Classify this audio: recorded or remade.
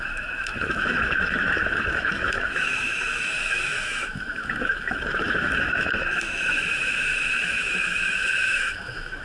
remade